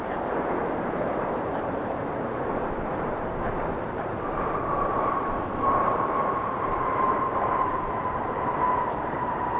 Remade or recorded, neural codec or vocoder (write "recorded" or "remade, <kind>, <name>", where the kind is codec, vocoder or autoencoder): remade, vocoder, BigVGAN v2